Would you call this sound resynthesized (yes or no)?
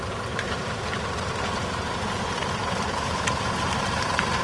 yes